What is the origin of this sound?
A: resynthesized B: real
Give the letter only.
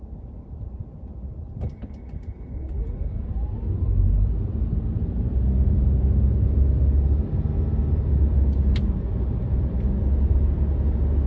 B